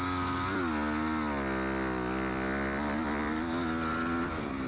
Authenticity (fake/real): real